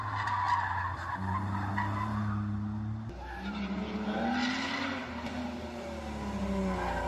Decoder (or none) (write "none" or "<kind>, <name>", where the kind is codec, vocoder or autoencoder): none